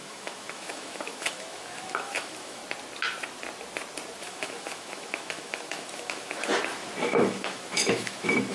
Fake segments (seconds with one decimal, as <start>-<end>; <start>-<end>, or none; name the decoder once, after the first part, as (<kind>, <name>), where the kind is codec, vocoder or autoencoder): 0.0-2.6 (autoencoder, DAC-VAE); 4.2-6.5; 7.0-8.5